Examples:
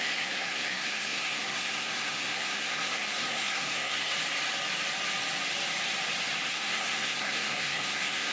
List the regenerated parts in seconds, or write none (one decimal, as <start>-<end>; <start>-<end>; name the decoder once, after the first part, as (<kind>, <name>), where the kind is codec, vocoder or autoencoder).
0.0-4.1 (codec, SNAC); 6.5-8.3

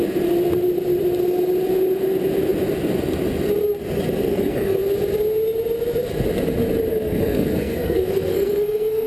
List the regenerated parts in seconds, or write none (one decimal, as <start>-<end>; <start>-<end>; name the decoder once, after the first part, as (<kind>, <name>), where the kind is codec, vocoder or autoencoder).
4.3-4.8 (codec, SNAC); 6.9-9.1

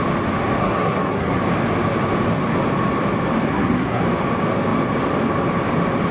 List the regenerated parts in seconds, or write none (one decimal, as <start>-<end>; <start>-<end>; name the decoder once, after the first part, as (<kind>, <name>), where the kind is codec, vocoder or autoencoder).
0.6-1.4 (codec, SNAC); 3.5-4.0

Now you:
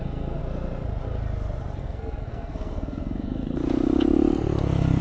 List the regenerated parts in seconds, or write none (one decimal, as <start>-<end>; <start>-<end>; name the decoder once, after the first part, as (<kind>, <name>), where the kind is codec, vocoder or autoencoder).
0.0-0.4 (codec, SNAC); 1.8-3.6

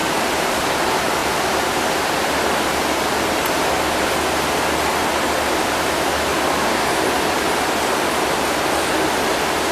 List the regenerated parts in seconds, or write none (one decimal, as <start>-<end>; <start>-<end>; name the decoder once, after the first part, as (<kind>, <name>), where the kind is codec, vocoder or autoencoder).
none

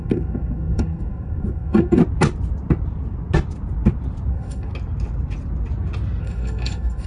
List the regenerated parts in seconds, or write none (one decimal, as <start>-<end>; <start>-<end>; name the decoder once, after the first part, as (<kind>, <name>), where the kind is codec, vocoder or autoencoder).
0.0-2.0 (codec, SNAC); 4.3-4.7; 6.2-7.1

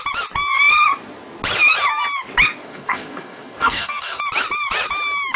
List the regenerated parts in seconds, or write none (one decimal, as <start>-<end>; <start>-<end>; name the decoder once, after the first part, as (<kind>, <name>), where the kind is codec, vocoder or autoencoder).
2.6-4.2 (codec, SNAC)